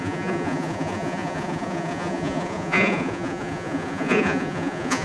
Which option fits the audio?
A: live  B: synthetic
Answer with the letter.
B